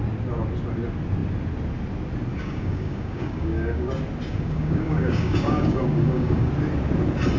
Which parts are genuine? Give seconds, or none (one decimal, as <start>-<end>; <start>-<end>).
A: 0.0-2.3; 3.9-4.3; 6.5-7.4